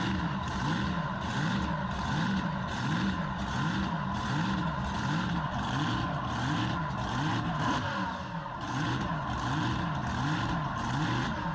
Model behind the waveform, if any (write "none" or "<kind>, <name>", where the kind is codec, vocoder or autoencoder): none